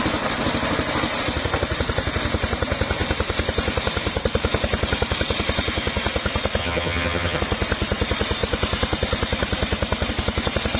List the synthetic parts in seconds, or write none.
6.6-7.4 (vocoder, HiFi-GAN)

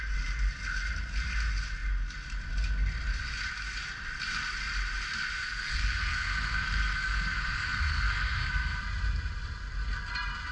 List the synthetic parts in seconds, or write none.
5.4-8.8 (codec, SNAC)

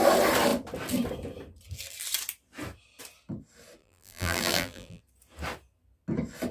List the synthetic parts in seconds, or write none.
3.8-5.0 (vocoder, BigVGAN v2)

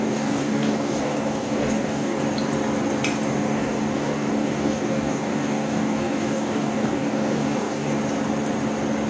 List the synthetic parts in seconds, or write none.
0.0-2.2 (codec, DAC); 3.4-8.0